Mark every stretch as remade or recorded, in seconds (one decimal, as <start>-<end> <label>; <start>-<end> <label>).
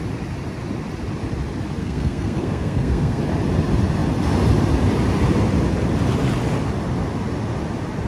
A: 0.0-1.8 recorded; 1.8-3.2 remade; 3.2-8.1 recorded